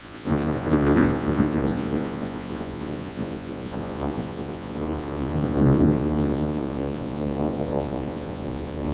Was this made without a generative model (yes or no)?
no